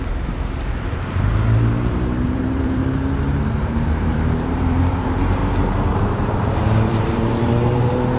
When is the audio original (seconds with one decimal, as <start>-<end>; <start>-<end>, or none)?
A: 2.8-3.5; 5.4-5.9